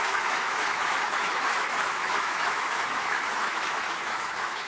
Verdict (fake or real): fake